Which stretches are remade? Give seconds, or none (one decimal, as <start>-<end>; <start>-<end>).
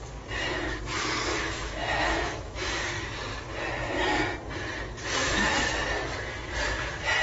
1.3-2.9; 5.2-5.7